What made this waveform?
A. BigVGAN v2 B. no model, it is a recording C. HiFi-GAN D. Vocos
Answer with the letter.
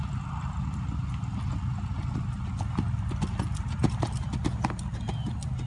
B